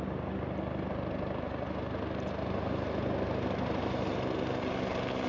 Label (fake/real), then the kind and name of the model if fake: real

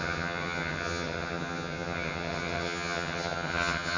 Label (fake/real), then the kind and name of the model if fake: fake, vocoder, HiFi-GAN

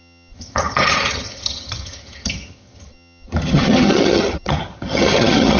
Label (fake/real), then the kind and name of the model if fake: fake, vocoder, HiFi-GAN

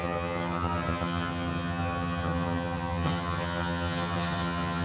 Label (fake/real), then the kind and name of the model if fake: fake, vocoder, HiFi-GAN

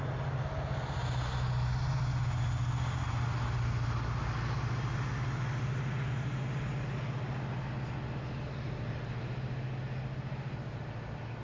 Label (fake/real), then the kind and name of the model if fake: real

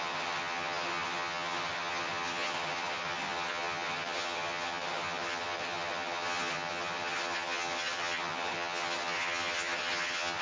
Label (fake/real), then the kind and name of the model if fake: fake, vocoder, HiFi-GAN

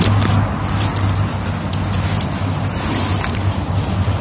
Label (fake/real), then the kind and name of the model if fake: real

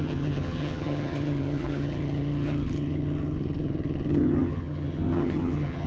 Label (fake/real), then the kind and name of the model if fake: fake, vocoder, HiFi-GAN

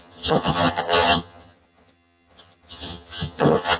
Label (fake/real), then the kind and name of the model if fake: fake, vocoder, HiFi-GAN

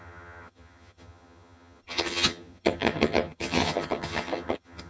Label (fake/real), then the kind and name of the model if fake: fake, vocoder, HiFi-GAN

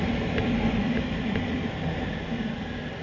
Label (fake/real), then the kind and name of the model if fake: real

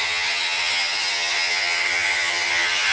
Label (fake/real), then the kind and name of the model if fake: fake, vocoder, HiFi-GAN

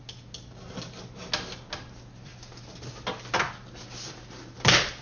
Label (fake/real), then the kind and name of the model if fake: real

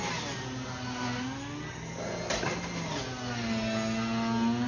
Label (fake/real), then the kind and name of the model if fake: real